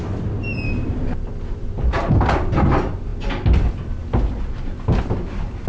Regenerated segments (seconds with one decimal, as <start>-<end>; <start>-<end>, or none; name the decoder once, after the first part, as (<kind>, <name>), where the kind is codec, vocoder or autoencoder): none